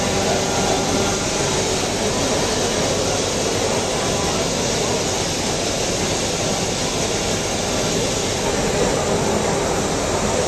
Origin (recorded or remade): recorded